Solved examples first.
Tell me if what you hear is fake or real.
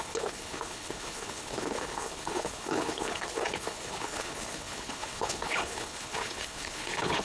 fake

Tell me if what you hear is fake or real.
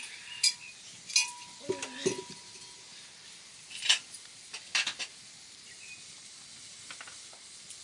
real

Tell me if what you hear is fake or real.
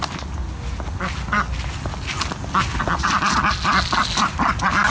real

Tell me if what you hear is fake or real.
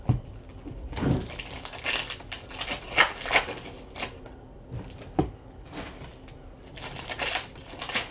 real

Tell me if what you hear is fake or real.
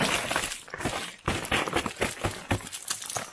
real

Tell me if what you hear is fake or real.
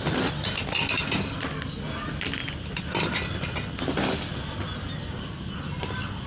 real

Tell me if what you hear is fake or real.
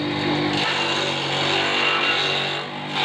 real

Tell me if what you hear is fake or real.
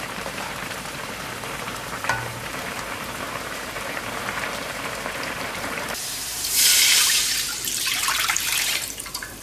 fake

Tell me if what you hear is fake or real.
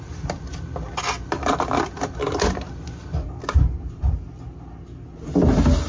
real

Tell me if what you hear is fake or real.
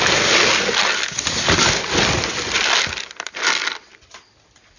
real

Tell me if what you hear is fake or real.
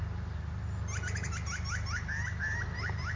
real